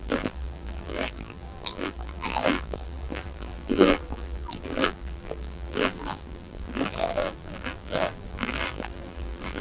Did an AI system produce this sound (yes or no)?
yes